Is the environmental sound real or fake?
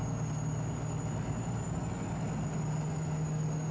real